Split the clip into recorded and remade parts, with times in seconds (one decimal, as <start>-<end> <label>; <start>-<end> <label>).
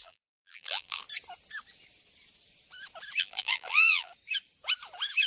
0.0-1.0 remade; 1.0-3.2 recorded; 3.2-4.1 remade; 4.1-5.3 recorded